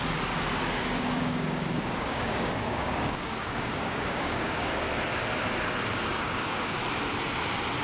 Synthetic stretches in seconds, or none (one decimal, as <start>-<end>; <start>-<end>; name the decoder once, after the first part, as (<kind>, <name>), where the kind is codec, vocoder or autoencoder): 0.8-4.9 (codec, DAC); 6.1-6.8